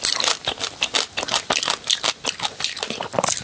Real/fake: real